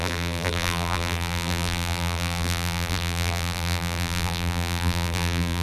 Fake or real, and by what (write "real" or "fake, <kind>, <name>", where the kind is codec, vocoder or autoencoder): fake, vocoder, BigVGAN v2